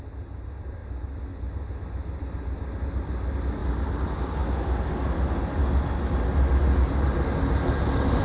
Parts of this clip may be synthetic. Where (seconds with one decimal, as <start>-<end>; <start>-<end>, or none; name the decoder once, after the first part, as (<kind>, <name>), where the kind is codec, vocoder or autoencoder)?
none